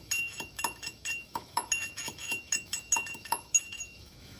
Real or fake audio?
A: fake